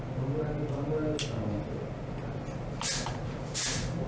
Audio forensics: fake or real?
real